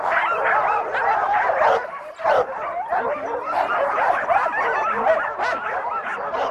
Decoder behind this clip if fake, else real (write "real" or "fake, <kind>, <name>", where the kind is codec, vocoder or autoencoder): real